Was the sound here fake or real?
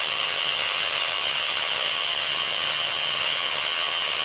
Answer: fake